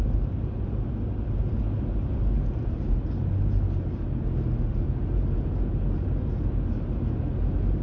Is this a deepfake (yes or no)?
no